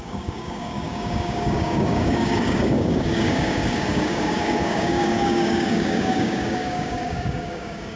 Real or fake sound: fake